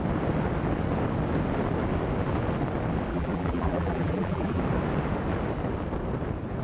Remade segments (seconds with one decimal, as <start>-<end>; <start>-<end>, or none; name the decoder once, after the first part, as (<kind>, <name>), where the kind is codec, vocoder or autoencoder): 3.1-4.6 (vocoder, BigVGAN v2)